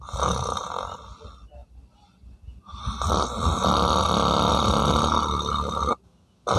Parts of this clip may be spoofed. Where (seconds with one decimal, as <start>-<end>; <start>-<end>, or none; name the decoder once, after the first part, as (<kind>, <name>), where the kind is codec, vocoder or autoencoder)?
none